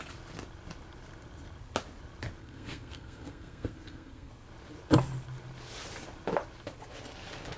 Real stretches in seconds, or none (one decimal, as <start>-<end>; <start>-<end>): 0.0-2.4; 4.3-7.6